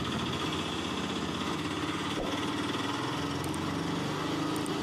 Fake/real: real